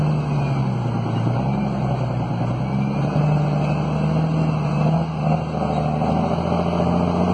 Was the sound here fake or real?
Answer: real